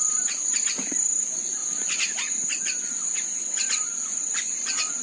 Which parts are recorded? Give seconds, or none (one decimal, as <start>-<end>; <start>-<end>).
0.0-5.0